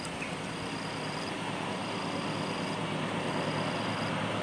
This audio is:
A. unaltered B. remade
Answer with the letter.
A